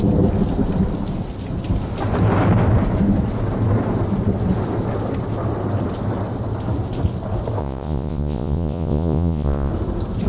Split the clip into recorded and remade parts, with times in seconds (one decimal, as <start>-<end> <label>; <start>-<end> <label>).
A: 0.0-7.6 recorded; 7.6-9.7 remade; 9.7-10.3 recorded